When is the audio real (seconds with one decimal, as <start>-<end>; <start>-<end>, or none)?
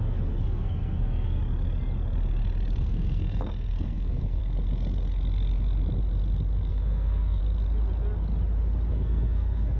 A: 1.4-2.8; 4.4-6.7; 7.4-8.9